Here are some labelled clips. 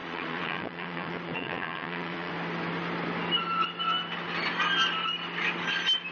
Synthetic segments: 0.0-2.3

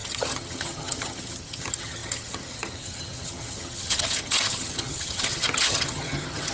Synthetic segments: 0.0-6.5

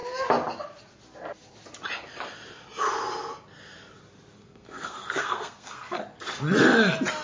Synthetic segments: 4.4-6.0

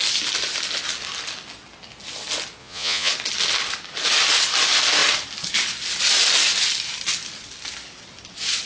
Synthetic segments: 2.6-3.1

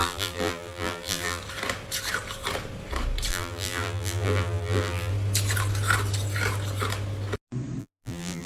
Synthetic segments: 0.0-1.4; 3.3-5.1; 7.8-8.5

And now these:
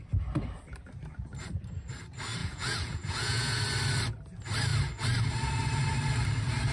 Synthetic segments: 2.4-3.6

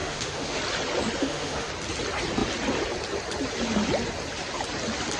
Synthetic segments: 0.0-0.6; 1.2-1.7